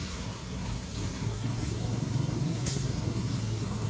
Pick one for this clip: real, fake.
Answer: fake